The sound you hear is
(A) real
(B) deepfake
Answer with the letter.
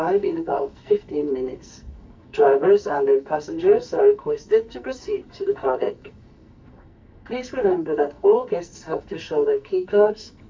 B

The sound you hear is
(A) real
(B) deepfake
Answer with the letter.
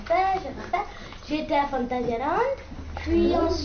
A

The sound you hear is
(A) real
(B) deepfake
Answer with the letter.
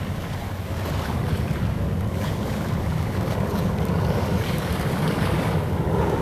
B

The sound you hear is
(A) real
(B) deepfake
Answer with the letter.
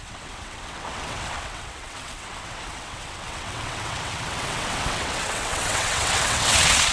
B